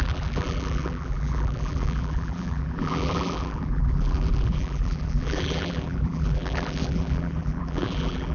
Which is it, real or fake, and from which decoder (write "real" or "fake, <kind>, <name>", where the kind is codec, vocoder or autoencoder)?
fake, vocoder, BigVGAN v2